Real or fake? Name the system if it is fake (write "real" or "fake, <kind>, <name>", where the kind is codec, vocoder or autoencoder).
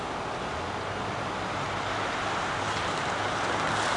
real